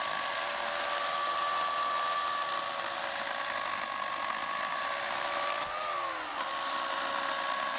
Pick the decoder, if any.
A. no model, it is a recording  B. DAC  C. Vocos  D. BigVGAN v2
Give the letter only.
A